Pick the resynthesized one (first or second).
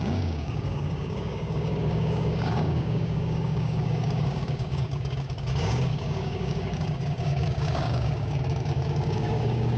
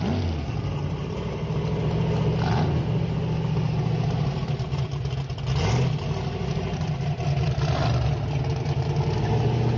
first